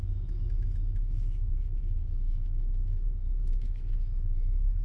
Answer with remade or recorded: remade